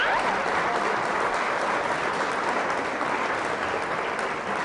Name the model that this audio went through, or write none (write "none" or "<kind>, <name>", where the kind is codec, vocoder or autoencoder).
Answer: none